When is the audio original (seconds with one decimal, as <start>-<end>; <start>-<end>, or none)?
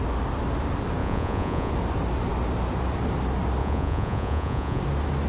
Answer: 0.0-1.0; 1.7-3.6; 4.8-5.3